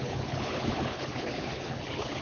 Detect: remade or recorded remade